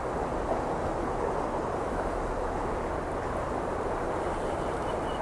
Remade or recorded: recorded